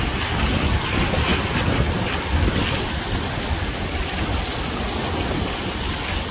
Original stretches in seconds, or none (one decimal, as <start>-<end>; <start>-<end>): 0.0-6.3